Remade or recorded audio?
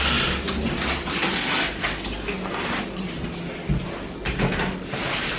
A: recorded